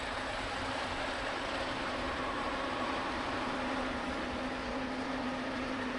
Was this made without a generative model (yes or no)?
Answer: no